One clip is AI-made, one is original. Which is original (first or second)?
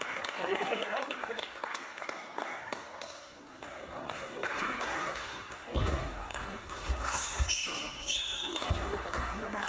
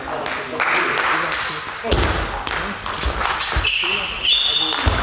second